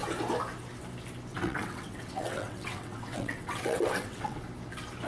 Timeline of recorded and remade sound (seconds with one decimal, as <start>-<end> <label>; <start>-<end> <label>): 0.0-1.3 recorded; 1.3-4.4 remade; 4.4-5.1 recorded